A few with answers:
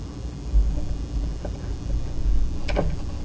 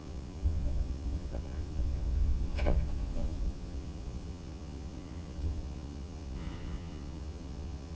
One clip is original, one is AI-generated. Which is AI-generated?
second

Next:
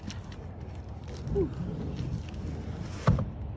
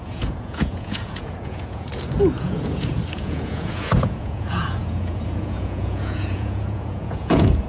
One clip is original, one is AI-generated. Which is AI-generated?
second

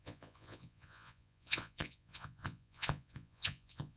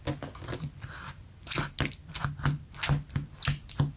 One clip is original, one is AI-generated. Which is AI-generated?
first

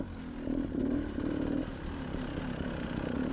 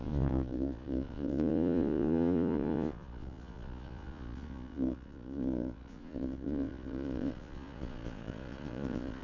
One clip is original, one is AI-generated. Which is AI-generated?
second